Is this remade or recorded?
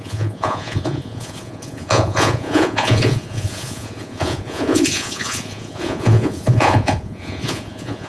remade